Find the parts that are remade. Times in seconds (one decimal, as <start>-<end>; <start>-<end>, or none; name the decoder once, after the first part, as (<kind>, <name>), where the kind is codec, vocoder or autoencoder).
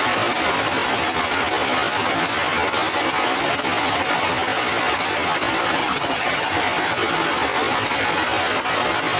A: 5.8-6.5 (vocoder, HiFi-GAN)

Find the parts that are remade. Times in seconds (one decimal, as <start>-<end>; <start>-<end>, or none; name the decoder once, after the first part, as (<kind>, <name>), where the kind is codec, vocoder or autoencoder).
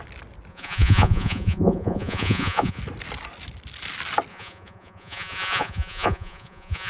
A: 0.5-2.8 (vocoder, Vocos); 4.3-6.9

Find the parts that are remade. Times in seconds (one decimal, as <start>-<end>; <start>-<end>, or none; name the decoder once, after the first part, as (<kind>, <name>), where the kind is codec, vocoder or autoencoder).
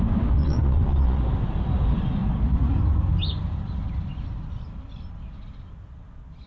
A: 0.4-1.2 (vocoder, Vocos)